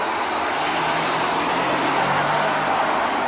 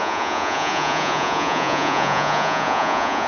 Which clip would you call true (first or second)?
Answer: first